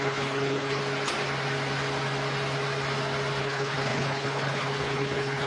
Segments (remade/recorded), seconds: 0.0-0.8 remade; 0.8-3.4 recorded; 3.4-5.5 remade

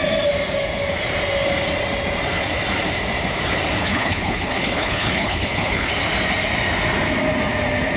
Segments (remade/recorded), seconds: 0.0-3.8 recorded; 3.8-5.9 remade; 5.9-8.0 recorded

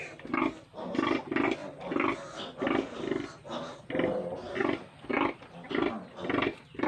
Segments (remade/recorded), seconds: 0.0-6.9 recorded

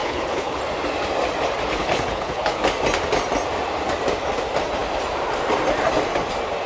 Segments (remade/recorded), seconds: 0.0-0.6 remade; 0.6-1.8 recorded; 1.8-2.6 remade; 2.6-6.7 recorded

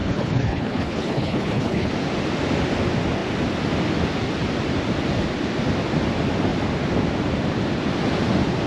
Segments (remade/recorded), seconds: 0.0-1.9 remade; 1.9-8.7 recorded

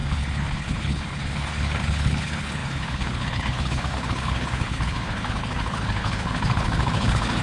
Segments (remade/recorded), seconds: 0.0-7.4 remade

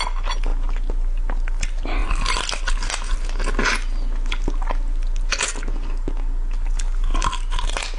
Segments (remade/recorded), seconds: 0.0-8.0 recorded

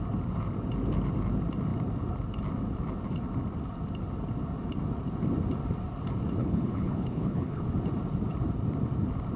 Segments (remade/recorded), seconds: 0.0-6.4 recorded; 6.4-7.6 remade; 7.6-9.4 recorded